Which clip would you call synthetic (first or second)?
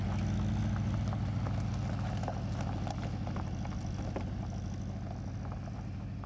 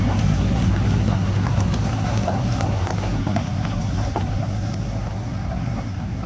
second